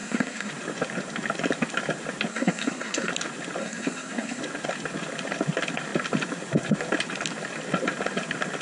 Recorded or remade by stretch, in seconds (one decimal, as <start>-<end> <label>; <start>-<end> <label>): 0.0-0.5 remade; 0.5-2.3 recorded; 2.3-3.1 remade; 3.1-3.6 recorded; 3.6-4.4 remade; 4.4-8.6 recorded